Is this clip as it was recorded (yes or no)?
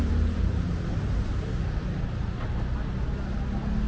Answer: yes